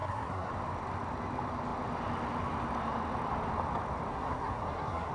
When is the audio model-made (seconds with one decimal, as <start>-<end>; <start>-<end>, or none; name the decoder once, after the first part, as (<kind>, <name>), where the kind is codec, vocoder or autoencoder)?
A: 0.0-0.5 (codec, SNAC); 4.1-5.1